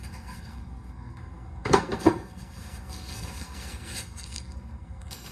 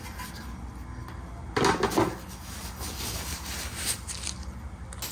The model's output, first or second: first